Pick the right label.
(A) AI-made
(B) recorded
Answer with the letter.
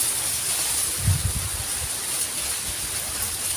B